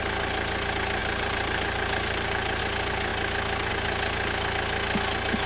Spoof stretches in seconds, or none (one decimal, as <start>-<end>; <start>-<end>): 1.0-2.6